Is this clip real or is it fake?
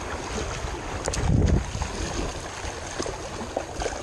real